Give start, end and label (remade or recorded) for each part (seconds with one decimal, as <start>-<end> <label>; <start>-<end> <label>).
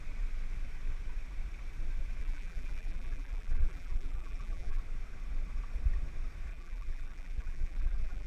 0.0-2.2 recorded; 2.2-4.8 remade; 4.8-6.5 recorded; 6.5-8.3 remade